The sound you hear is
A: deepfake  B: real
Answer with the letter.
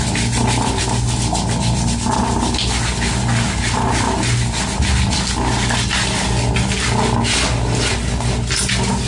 B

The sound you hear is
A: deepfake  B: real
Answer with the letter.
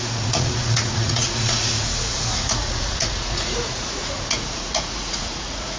A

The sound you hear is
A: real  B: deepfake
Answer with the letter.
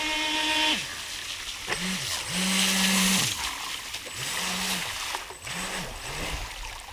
A